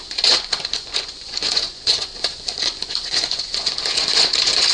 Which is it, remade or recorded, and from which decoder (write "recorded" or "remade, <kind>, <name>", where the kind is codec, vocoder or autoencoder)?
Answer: remade, vocoder, Vocos